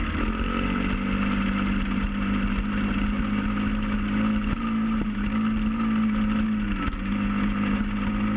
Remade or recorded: recorded